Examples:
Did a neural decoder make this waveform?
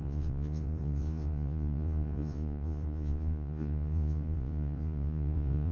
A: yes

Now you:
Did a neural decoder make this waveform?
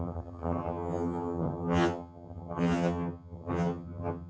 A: yes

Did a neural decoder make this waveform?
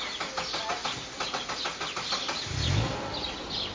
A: no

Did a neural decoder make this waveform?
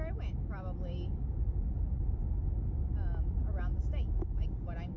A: no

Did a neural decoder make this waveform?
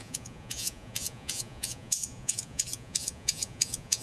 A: yes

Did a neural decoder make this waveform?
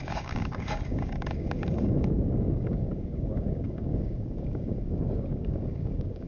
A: yes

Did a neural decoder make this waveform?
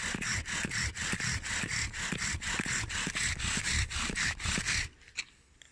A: no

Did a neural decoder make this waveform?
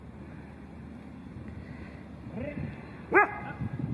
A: no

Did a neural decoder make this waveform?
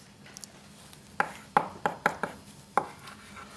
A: no